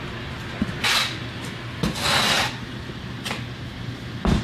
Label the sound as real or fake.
real